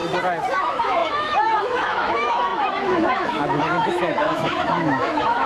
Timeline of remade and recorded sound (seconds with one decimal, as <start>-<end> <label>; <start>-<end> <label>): 0.0-0.5 recorded; 0.5-5.5 remade

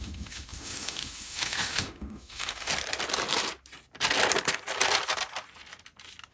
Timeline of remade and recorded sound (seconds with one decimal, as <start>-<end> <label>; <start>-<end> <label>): 0.0-2.7 remade; 2.7-6.3 recorded